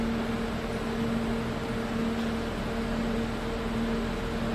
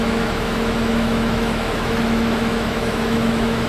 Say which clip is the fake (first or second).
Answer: second